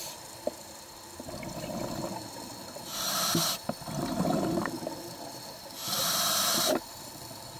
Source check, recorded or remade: remade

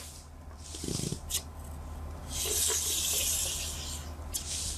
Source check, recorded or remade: recorded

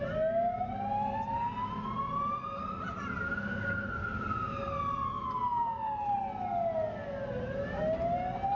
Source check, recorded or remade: recorded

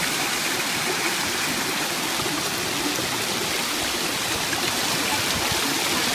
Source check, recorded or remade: recorded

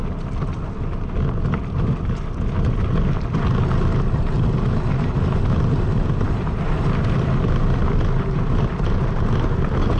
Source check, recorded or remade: recorded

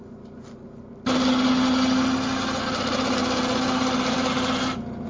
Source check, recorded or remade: recorded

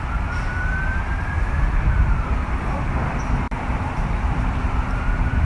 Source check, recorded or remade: remade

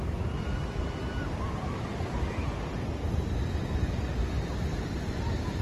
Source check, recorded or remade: recorded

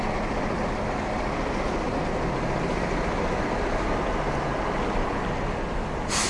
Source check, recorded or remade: recorded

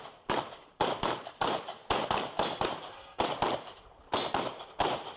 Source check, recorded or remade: remade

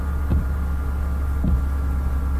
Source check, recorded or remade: recorded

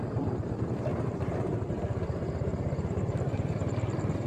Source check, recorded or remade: remade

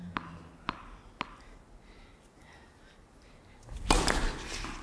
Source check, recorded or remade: recorded